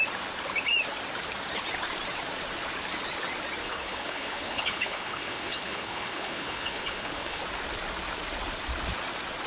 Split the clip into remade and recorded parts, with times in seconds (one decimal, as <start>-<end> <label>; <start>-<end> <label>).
0.0-3.6 recorded; 3.6-7.4 remade; 7.4-9.5 recorded